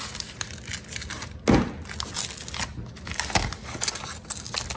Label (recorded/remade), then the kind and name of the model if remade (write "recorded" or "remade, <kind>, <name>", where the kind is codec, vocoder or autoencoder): recorded